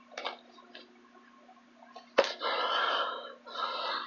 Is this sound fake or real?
real